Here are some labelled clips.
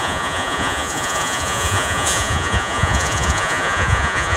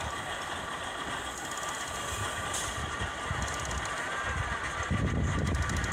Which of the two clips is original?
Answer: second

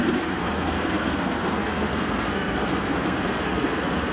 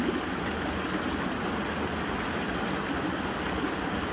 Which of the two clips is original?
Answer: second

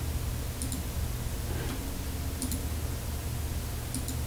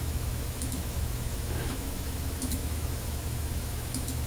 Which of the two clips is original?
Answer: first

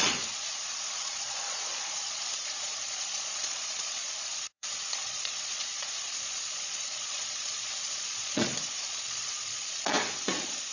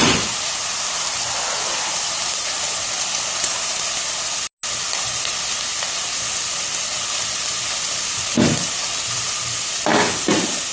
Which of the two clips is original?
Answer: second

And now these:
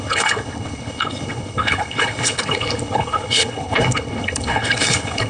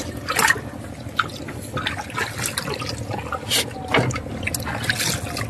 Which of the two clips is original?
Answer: second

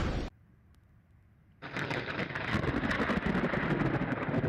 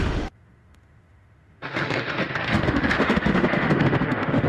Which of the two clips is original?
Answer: first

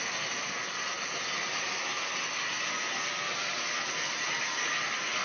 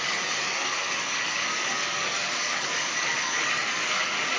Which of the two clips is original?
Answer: first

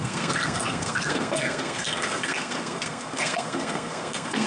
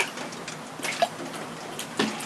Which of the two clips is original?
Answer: second